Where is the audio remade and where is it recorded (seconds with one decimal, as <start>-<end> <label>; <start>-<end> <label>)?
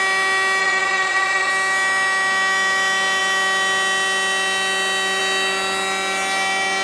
0.0-0.6 recorded; 0.6-1.5 remade; 1.5-6.8 recorded